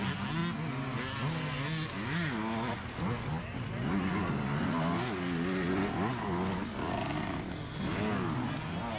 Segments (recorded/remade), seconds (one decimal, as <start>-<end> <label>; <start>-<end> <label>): 0.0-9.0 recorded